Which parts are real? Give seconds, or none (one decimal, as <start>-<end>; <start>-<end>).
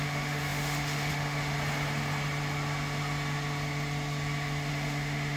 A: 1.5-4.7